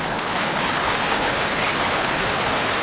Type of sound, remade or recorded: remade